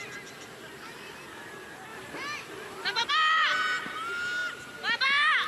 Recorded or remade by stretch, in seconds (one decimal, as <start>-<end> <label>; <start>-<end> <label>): 0.0-5.5 recorded